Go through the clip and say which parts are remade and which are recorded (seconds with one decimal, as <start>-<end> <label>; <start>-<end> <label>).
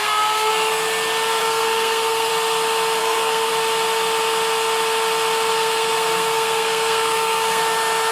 0.0-0.5 remade; 0.5-1.4 recorded; 1.4-2.3 remade; 2.3-3.0 recorded; 3.0-3.5 remade; 3.5-5.5 recorded; 5.5-7.6 remade; 7.6-8.1 recorded